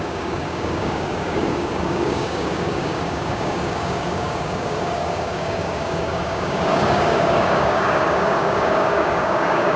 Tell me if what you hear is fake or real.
fake